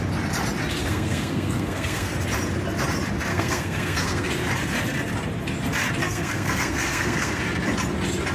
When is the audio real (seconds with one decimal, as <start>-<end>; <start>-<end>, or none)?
0.0-0.8; 2.1-3.3; 4.3-6.0; 7.4-8.3